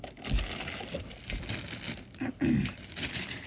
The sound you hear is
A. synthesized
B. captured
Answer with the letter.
B